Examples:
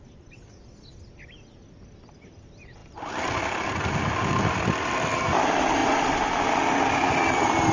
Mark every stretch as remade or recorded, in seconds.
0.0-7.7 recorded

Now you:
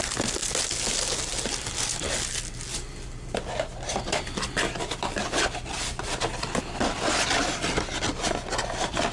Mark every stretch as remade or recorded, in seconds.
0.0-2.7 recorded; 2.7-6.6 remade; 6.6-9.1 recorded

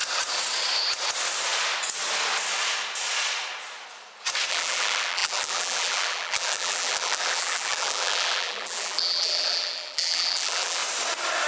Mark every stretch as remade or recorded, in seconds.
0.0-4.5 recorded; 4.5-10.8 remade; 10.8-11.5 recorded

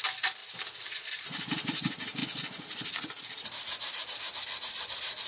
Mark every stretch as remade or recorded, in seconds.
0.0-0.4 remade; 0.4-1.0 recorded; 1.0-2.2 remade; 2.2-3.2 recorded; 3.2-5.3 remade

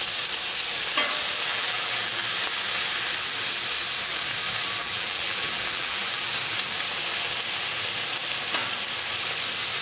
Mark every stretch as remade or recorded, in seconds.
0.0-1.5 recorded; 1.5-2.2 remade; 2.2-4.8 recorded; 4.8-6.3 remade; 6.3-9.8 recorded